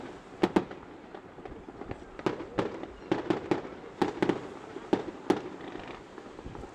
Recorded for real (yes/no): yes